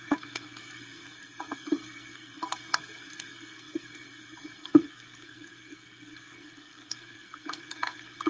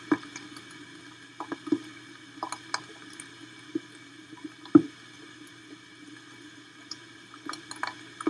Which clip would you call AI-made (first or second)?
first